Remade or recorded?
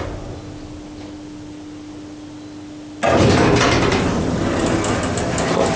recorded